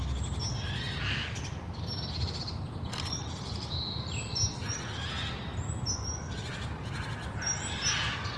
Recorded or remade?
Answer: recorded